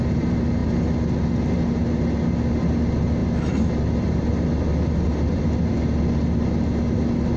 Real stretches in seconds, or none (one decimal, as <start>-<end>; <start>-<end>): 0.0-7.4